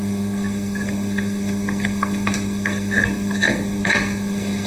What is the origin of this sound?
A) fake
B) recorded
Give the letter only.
A